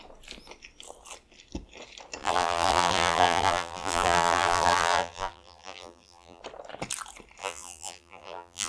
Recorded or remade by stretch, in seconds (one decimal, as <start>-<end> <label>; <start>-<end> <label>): 0.0-2.2 recorded; 2.2-6.4 remade; 6.4-7.4 recorded; 7.4-8.7 remade